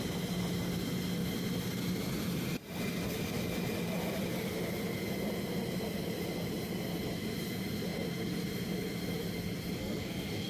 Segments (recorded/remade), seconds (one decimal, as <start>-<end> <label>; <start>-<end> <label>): 0.0-9.8 recorded; 9.8-10.5 remade